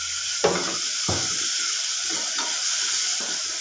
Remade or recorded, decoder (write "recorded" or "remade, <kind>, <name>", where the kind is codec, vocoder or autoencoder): recorded